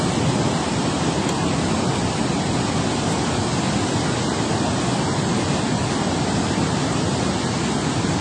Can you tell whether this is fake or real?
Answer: real